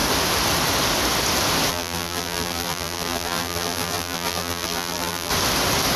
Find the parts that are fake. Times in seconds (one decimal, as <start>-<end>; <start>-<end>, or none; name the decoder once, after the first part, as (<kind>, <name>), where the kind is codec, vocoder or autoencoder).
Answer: 1.7-5.3 (vocoder, BigVGAN v2)